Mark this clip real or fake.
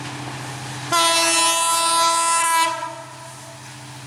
real